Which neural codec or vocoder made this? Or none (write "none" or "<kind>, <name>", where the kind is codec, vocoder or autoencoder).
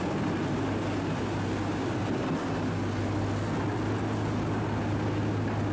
none